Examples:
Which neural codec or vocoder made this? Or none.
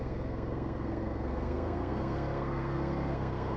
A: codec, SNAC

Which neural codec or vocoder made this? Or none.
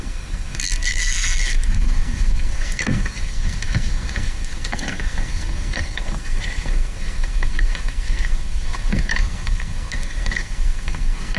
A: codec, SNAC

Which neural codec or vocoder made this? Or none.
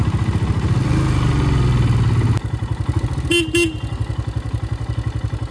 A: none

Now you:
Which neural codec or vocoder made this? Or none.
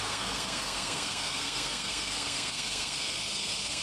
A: codec, SNAC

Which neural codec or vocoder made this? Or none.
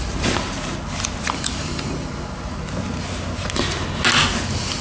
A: none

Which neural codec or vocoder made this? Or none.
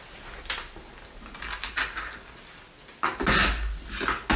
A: none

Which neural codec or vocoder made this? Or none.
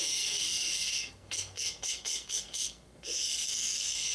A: codec, SNAC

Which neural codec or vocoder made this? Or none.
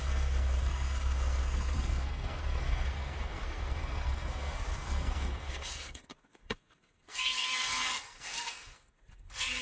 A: codec, SNAC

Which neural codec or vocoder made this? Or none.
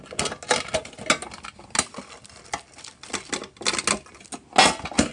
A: none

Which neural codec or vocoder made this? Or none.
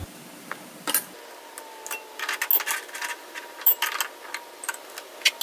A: none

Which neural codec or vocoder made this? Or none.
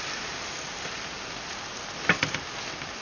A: none